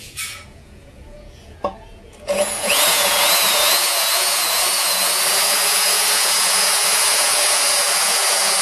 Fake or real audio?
fake